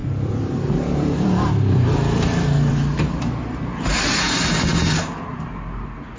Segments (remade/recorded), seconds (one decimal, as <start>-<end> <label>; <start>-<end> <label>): 0.0-3.7 remade; 3.7-6.2 recorded